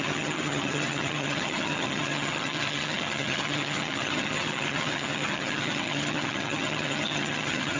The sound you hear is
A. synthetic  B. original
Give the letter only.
A